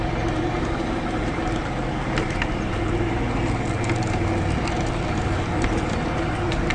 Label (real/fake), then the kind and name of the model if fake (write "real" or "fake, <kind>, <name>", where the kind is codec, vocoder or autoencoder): real